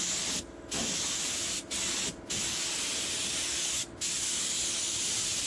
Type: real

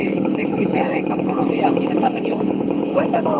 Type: fake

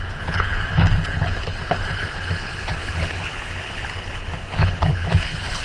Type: fake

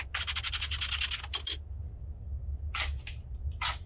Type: real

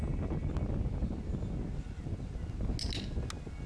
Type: real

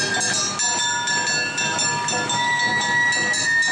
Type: real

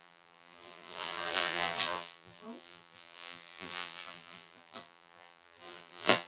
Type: fake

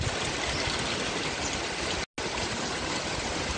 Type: real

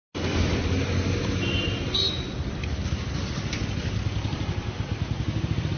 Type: real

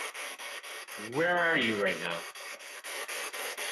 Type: fake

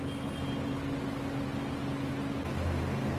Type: real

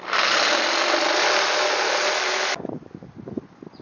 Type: real